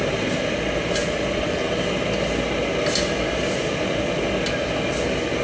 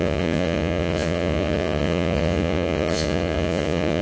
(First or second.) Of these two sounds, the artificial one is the second